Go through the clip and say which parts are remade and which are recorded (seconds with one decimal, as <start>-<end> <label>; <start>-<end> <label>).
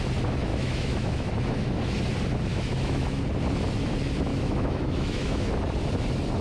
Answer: 0.0-0.5 recorded; 0.5-1.3 remade; 1.3-2.5 recorded; 2.5-3.2 remade; 3.2-4.3 recorded; 4.3-5.5 remade; 5.5-6.4 recorded